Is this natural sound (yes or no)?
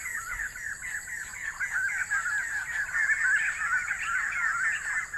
yes